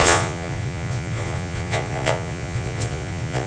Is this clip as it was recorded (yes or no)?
no